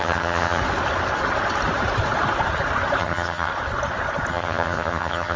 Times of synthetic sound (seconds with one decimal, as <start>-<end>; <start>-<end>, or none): 0.0-0.6; 3.0-3.5; 4.3-5.4